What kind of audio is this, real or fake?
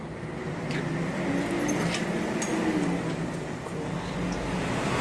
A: real